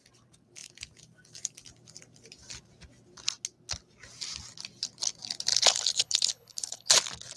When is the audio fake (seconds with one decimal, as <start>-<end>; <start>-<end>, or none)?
5.5-6.9